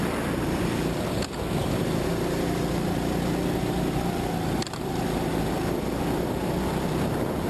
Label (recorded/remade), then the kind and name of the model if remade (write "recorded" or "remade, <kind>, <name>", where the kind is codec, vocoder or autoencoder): recorded